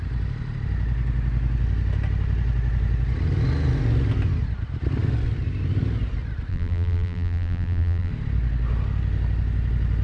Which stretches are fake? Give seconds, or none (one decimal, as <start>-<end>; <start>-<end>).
6.5-8.1